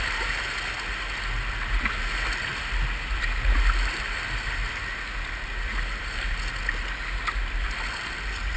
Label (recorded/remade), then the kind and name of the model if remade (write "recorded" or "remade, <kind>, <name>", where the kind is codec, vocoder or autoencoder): recorded